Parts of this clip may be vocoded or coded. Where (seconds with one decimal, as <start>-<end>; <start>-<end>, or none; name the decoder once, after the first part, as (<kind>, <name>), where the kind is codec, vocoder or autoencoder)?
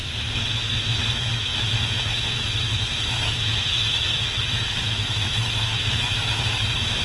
0.0-7.0 (autoencoder, DAC-VAE)